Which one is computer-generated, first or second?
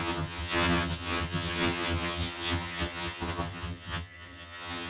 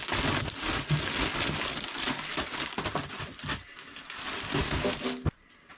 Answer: first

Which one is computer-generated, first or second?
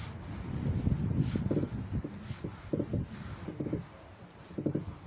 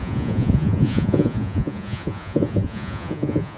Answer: second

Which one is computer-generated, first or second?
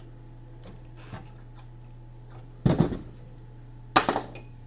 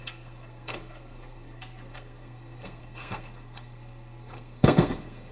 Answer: second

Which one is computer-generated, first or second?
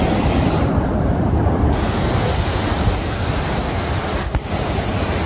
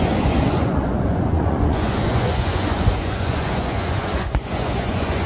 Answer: second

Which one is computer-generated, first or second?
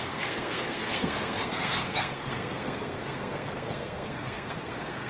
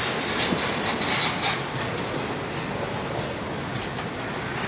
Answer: first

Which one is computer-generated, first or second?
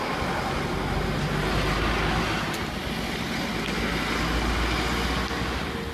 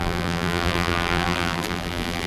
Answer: second